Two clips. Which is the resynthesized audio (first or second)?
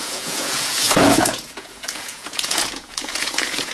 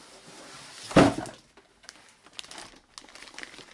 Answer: first